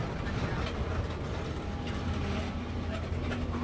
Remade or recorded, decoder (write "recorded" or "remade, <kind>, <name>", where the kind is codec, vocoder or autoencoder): recorded